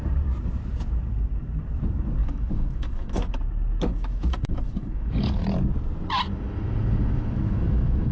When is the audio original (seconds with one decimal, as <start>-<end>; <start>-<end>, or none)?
0.0-2.2; 3.4-3.9; 5.4-6.3